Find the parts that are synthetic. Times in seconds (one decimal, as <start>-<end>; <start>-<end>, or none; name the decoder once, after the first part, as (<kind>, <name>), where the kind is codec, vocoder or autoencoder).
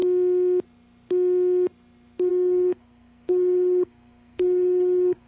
2.3-5.3 (codec, SNAC)